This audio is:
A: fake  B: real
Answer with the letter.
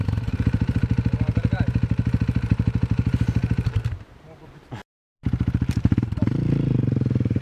A